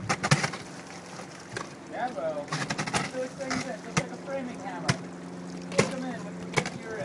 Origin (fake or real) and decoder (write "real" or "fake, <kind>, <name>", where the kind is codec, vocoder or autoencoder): real